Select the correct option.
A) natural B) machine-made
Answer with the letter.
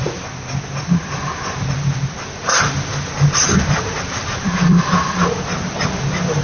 B